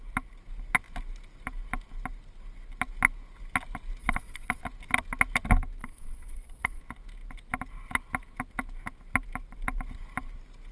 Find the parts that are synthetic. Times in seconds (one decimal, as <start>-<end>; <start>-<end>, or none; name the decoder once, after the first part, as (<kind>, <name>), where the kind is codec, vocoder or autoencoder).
4.0-4.6 (vocoder, Vocos); 5.8-6.8